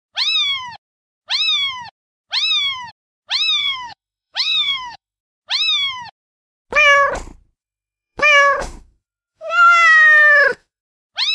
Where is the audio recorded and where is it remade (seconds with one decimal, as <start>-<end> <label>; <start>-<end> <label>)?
0.0-3.6 recorded; 3.6-5.2 remade; 5.2-7.6 recorded; 7.6-10.8 remade; 10.8-11.3 recorded